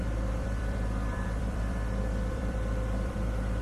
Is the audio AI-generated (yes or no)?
yes